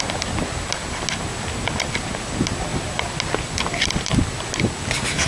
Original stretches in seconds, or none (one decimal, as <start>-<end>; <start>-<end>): 0.0-5.3